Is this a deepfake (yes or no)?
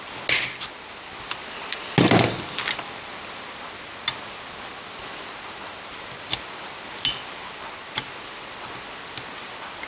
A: no